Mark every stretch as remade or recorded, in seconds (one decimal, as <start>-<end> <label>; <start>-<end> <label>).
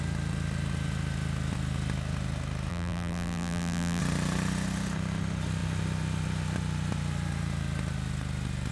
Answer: 0.0-2.7 recorded; 2.7-4.0 remade; 4.0-8.7 recorded